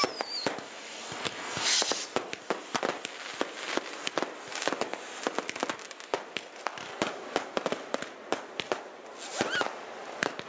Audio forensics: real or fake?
real